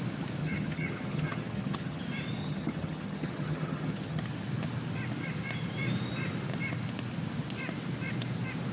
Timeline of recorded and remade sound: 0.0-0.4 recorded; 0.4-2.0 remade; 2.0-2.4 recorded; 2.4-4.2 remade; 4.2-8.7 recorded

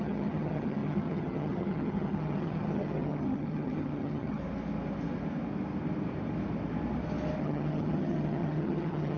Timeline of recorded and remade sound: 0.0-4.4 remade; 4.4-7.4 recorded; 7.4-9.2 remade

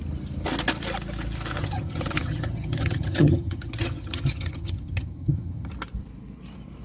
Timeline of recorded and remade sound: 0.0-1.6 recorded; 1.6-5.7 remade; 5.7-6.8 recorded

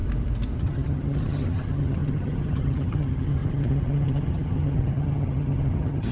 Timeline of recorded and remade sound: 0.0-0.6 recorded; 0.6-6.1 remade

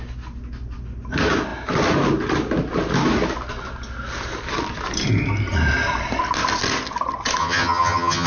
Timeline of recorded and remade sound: 0.0-7.4 recorded; 7.4-8.3 remade

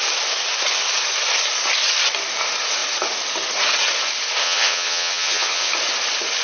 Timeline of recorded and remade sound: 0.0-4.4 recorded; 4.4-5.7 remade; 5.7-6.4 recorded

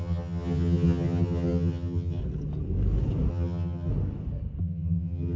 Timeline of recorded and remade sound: 0.0-2.2 remade; 2.2-3.3 recorded; 3.3-3.9 remade; 3.9-4.6 recorded; 4.6-5.4 remade